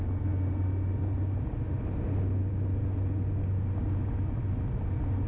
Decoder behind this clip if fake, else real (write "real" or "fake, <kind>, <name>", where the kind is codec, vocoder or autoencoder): real